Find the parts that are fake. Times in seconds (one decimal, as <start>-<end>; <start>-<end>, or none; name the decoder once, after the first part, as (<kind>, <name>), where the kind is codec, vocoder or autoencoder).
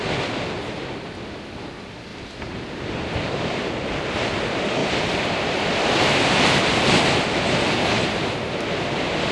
2.1-3.3 (vocoder, BigVGAN v2); 4.8-6.6